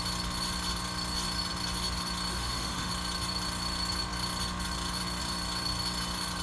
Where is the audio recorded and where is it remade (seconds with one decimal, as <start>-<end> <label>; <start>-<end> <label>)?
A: 0.0-2.3 recorded; 2.3-2.9 remade; 2.9-6.4 recorded